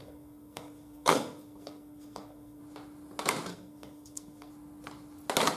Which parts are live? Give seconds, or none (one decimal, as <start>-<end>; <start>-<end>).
2.6-3.5; 4.5-5.6